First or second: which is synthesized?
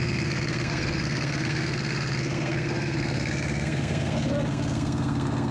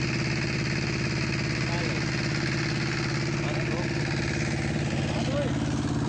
first